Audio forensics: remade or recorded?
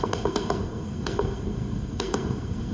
remade